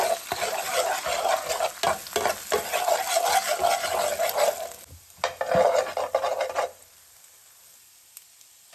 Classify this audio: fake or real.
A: real